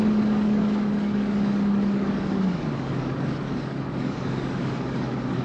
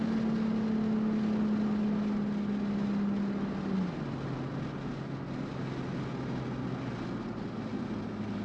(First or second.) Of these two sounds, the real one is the second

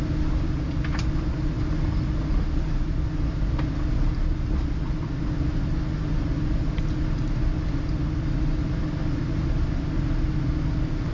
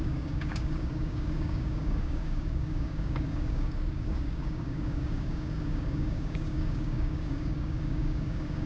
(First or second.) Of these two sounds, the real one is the first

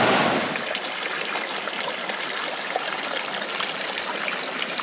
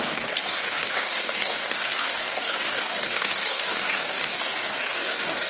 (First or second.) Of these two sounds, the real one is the first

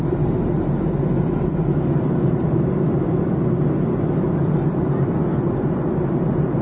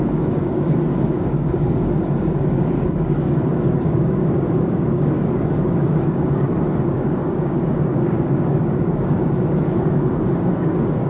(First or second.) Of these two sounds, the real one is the first